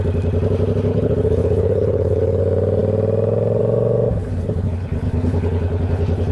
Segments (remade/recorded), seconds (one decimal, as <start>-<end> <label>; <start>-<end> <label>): 0.0-0.9 recorded; 0.9-2.4 remade; 2.4-4.2 recorded; 4.2-6.3 remade